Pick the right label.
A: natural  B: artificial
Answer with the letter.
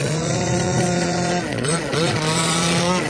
B